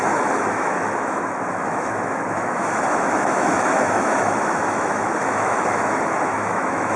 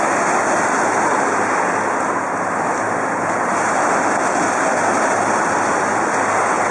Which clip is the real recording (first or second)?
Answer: second